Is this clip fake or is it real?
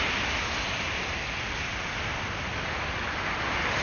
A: real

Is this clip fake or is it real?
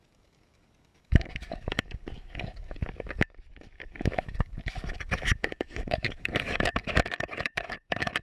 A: fake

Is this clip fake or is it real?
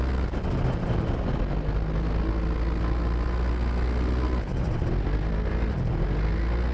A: real